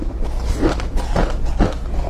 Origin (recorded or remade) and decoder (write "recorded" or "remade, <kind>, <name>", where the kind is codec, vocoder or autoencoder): recorded